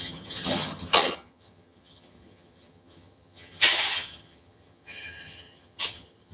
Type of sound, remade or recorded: remade